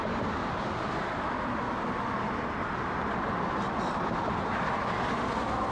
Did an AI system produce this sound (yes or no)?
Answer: no